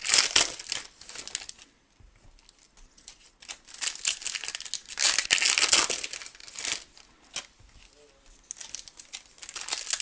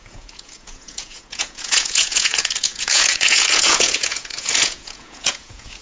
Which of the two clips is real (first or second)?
first